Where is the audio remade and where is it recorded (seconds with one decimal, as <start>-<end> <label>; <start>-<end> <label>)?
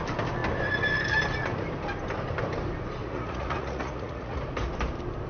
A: 0.0-3.0 recorded; 3.0-4.4 remade; 4.4-5.3 recorded